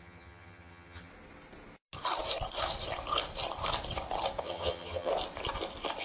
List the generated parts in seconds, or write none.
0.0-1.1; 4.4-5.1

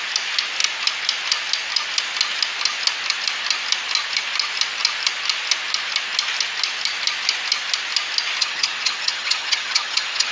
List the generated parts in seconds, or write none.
8.4-10.3

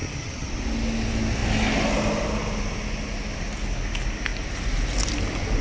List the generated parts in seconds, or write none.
0.0-0.5

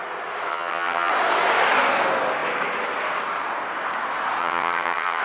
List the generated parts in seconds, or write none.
0.5-1.1; 4.4-5.2

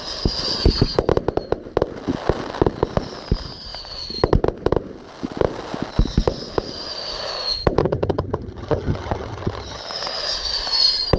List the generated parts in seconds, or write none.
7.8-9.8